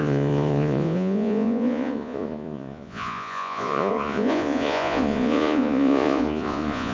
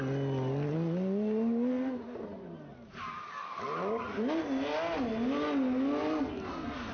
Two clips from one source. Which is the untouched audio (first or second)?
second